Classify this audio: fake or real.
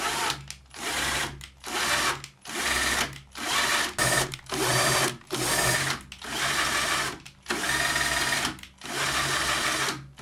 real